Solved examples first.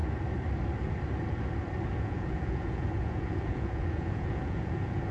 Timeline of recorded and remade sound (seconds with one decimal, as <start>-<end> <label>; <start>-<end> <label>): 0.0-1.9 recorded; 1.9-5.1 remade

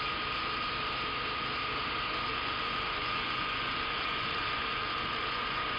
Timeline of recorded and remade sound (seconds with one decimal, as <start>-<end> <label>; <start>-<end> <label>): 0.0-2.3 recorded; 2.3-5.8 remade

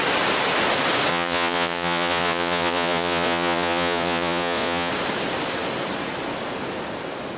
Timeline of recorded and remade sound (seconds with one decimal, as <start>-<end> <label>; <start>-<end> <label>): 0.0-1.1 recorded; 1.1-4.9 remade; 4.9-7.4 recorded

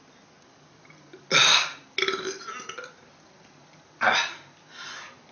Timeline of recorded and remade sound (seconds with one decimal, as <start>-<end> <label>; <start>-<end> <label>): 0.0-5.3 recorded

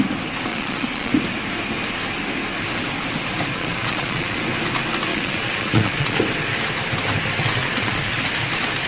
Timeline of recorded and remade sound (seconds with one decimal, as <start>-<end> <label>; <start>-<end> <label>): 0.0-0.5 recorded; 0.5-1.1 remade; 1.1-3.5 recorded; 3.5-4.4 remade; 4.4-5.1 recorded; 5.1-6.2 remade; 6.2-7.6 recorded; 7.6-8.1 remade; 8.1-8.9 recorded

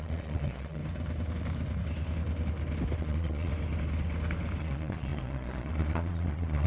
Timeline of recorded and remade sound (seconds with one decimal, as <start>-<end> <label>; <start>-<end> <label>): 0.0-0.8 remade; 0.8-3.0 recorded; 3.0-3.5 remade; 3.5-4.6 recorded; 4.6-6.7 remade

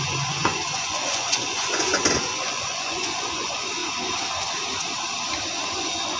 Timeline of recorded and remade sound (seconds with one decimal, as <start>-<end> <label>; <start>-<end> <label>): 0.0-3.8 remade; 3.8-5.7 recorded; 5.7-6.2 remade